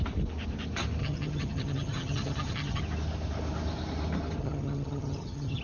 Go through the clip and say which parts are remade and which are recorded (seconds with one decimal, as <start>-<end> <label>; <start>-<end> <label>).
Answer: 0.0-1.0 recorded; 1.0-2.8 remade; 2.8-4.4 recorded; 4.4-5.6 remade